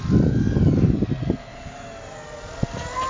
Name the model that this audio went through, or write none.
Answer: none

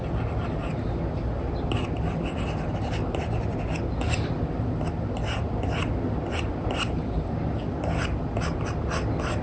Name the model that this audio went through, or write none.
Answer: none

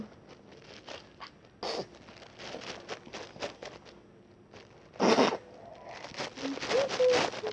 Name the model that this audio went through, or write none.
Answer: none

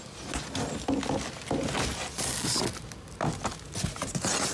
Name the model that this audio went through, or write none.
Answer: none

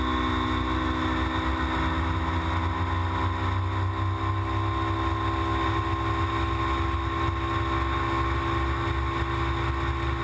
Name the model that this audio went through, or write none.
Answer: none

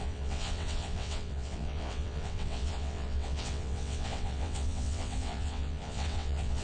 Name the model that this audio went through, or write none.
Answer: vocoder, WaveNeXt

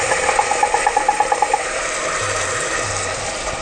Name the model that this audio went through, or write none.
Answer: none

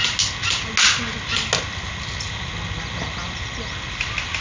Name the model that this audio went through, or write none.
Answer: none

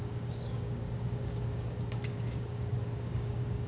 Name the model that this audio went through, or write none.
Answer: codec, DAC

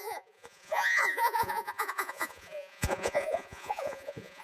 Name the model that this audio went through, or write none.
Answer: vocoder, Vocos